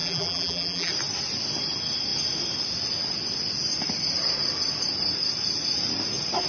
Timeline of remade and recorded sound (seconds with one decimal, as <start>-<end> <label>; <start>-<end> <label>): 0.0-0.9 remade; 0.9-6.5 recorded